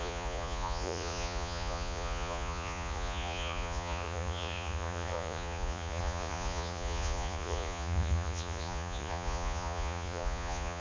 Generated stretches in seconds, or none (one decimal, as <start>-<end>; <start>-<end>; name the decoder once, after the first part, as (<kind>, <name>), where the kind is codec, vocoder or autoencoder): 0.0-10.8 (vocoder, Vocos)